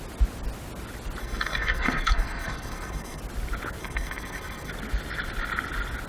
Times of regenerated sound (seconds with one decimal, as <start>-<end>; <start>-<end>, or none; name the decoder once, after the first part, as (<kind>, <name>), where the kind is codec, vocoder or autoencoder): 1.2-3.2 (codec, SNAC); 3.8-4.7